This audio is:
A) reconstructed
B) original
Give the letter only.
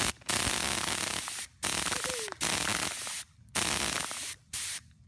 B